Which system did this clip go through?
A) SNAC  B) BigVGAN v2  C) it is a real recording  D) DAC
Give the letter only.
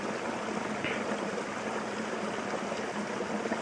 C